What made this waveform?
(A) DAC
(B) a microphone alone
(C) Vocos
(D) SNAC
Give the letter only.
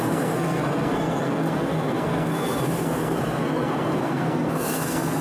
D